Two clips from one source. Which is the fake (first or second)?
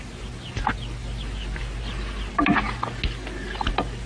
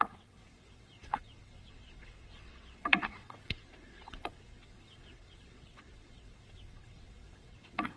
second